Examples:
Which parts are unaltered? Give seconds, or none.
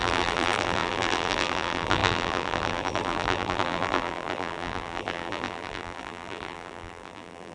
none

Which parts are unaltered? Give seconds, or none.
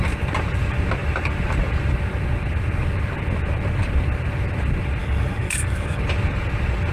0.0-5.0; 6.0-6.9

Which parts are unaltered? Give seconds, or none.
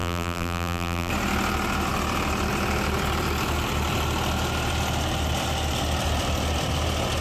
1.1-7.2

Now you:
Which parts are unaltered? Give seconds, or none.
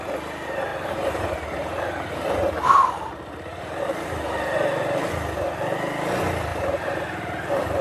0.0-0.7; 4.2-6.5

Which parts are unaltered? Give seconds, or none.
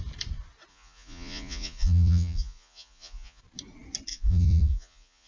0.0-0.7; 3.4-4.1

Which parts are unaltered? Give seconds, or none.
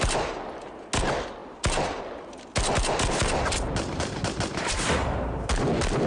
0.0-6.1